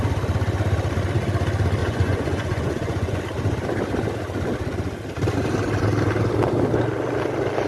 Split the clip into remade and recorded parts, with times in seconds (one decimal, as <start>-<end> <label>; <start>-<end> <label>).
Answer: 0.0-1.8 recorded; 1.8-3.2 remade; 3.2-7.7 recorded